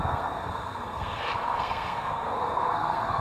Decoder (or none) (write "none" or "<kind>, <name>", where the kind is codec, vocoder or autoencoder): codec, SNAC